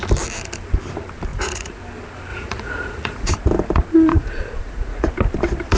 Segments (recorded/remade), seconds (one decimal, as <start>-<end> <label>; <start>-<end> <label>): 0.0-1.3 recorded; 1.3-1.8 remade; 1.8-2.3 recorded; 2.3-3.3 remade; 3.3-4.1 recorded; 4.1-5.1 remade; 5.1-5.8 recorded